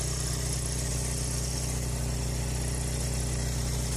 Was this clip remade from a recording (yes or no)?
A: no